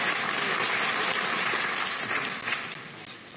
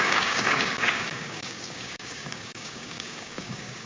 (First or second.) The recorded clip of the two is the first